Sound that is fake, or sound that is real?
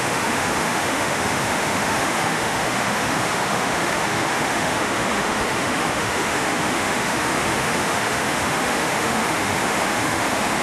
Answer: fake